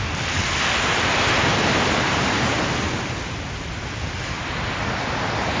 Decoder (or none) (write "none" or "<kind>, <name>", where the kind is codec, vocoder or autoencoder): none